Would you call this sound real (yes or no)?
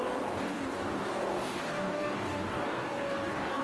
no